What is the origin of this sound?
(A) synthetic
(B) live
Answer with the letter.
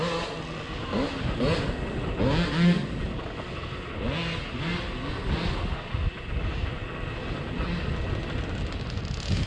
B